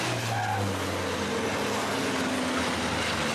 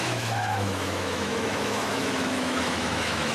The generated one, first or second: second